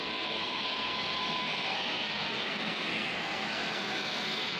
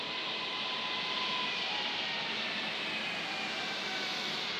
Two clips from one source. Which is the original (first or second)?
second